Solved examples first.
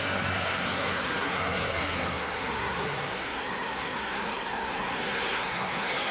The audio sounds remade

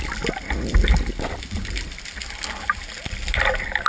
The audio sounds recorded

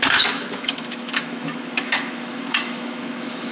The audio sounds remade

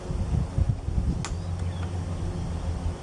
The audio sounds recorded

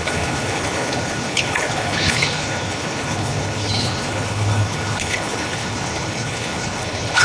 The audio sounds remade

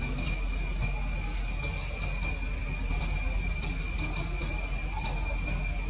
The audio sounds recorded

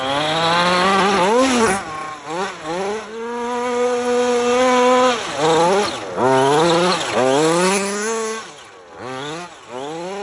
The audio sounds recorded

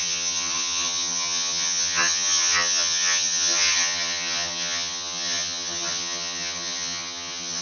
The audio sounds remade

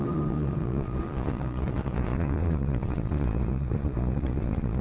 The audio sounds remade